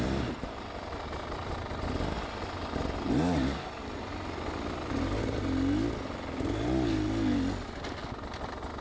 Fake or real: real